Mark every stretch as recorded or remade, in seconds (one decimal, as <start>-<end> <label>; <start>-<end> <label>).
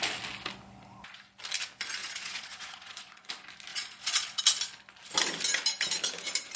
0.0-2.0 recorded; 2.0-3.3 remade; 3.3-3.7 recorded; 3.7-4.4 remade; 4.4-6.6 recorded